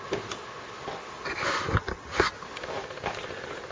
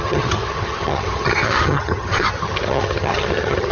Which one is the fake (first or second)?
second